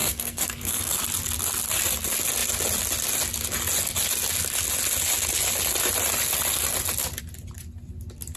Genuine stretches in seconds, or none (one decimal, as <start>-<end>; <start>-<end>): 1.0-8.4